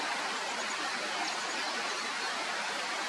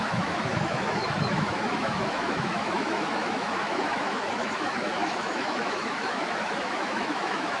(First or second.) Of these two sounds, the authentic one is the first